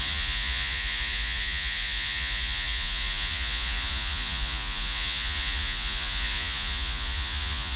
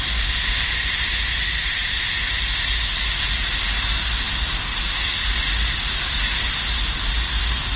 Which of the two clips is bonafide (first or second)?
second